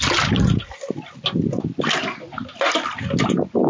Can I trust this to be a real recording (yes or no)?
yes